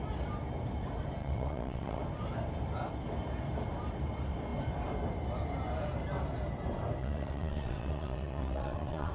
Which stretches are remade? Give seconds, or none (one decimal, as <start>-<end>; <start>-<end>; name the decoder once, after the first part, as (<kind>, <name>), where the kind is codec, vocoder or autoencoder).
1.2-2.0 (vocoder, WaveNeXt); 7.0-9.1